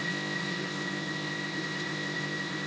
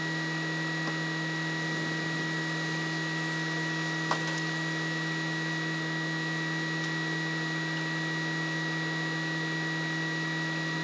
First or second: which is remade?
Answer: first